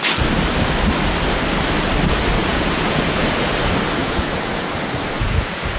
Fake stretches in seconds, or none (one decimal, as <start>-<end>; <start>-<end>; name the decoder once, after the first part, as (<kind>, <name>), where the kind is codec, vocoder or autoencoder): 2.4-3.2 (vocoder, Vocos); 4.0-4.7; 5.2-5.8